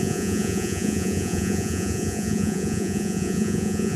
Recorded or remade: remade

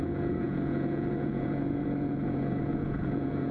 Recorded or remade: remade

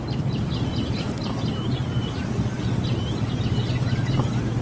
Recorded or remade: recorded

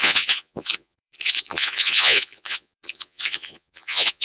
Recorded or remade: remade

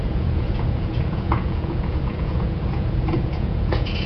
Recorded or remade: remade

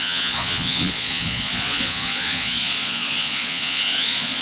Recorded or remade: remade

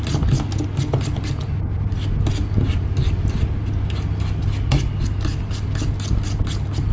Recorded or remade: recorded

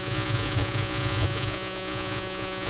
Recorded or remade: remade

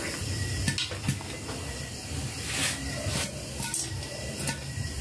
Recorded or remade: recorded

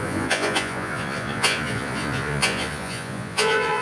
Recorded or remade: remade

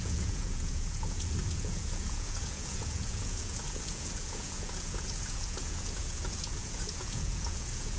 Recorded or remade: remade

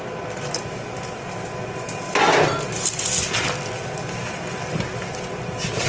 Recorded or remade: recorded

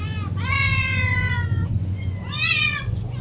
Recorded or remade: remade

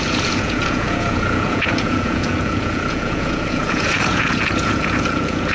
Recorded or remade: remade